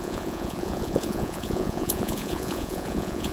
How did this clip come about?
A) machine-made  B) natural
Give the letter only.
A